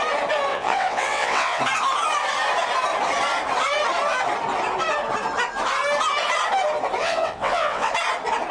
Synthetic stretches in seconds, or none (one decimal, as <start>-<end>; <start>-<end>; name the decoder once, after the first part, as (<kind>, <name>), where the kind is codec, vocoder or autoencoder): 0.5-1.6 (vocoder, WaveNeXt); 7.0-7.9